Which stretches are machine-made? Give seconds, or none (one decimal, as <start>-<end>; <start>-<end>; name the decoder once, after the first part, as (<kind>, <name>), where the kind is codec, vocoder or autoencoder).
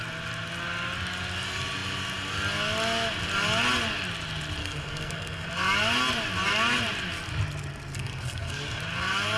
4.6-5.5 (codec, SNAC); 7.9-8.8